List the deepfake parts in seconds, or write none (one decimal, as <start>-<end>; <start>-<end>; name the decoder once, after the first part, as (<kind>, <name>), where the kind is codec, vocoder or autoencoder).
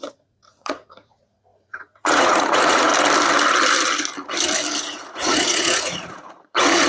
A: 0.0-2.9 (vocoder, Vocos); 4.8-6.9